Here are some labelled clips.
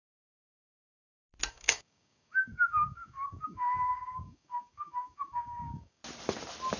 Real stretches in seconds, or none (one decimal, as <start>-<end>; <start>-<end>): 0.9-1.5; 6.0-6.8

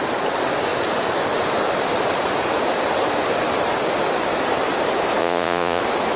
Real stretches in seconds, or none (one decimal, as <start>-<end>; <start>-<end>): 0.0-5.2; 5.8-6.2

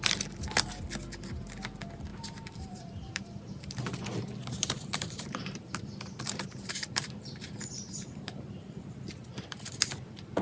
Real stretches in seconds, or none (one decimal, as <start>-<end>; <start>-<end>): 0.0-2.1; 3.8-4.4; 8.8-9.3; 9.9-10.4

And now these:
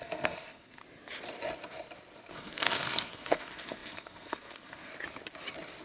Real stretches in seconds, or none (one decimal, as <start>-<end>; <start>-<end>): 0.8-2.3; 4.9-5.8

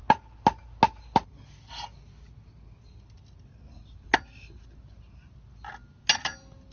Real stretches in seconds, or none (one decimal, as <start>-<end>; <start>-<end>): 0.0-6.7

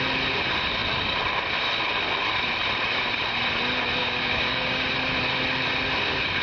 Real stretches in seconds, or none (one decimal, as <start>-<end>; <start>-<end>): 0.0-4.0; 4.9-6.4